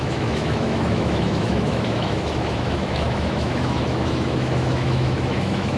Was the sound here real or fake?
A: fake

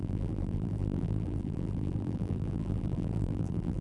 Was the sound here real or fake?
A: fake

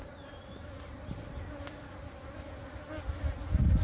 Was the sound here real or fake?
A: real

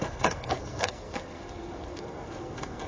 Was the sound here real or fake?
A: fake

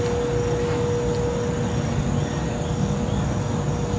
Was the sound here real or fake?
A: real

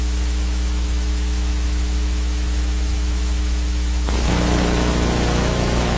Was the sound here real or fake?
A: fake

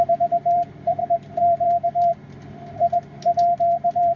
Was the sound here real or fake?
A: fake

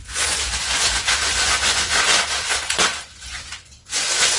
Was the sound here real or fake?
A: fake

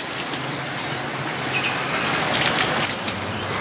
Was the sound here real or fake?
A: real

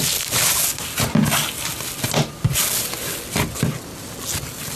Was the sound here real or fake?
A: real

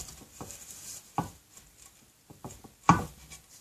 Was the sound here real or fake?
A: real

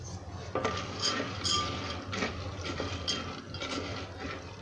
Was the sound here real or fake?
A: real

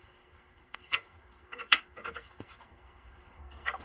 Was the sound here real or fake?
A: fake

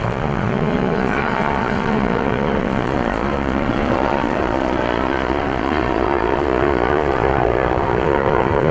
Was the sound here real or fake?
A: fake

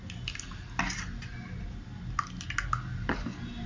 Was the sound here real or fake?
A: real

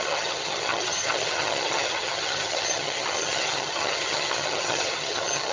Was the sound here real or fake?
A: fake